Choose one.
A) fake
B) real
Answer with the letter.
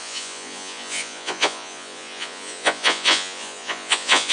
A